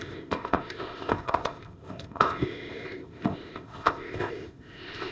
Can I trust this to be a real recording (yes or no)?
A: no